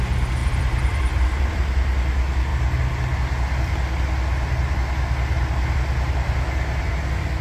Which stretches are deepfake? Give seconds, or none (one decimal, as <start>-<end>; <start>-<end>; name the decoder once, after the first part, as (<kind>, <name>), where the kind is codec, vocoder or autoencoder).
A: 0.4-1.6 (vocoder, BigVGAN v2)